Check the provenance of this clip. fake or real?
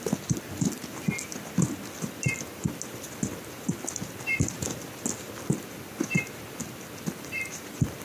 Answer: real